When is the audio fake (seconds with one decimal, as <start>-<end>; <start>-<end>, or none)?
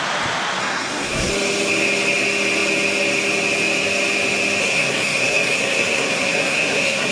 0.6-1.3; 4.6-7.1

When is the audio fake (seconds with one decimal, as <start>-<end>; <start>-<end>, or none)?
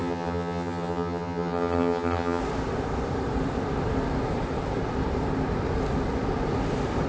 0.0-2.4